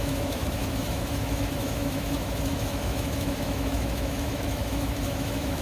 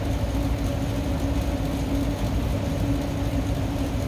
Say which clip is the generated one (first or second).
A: first